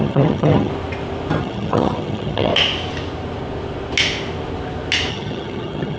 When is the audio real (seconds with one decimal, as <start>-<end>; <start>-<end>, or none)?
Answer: 0.7-1.4; 2.5-5.1